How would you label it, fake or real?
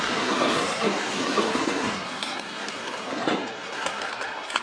fake